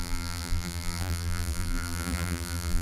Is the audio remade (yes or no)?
yes